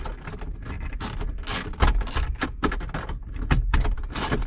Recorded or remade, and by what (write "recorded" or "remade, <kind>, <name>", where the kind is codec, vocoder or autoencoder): recorded